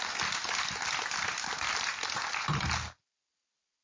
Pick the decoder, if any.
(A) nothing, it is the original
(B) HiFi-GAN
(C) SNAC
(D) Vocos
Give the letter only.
A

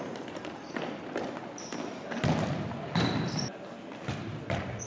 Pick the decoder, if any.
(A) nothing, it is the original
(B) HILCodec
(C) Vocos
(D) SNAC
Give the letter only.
A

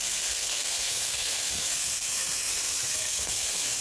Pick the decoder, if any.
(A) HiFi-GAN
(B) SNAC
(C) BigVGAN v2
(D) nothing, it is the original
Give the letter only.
B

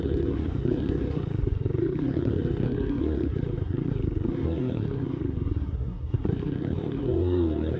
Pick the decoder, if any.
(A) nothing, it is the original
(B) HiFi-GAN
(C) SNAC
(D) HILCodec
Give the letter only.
C